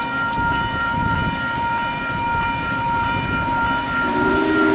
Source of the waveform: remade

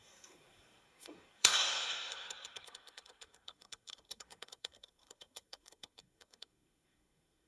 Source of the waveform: remade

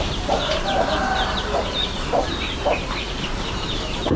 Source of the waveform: remade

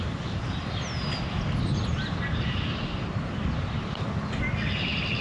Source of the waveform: recorded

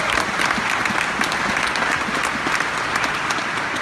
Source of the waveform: recorded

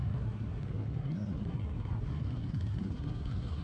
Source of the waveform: remade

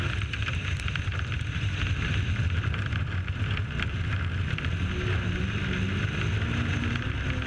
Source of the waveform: recorded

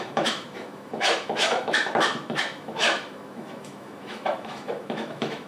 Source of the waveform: remade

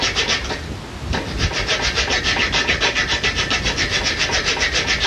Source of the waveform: recorded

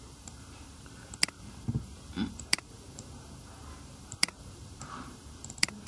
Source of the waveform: remade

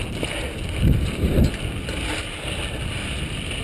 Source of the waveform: recorded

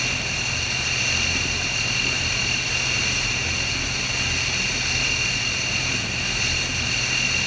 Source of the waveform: recorded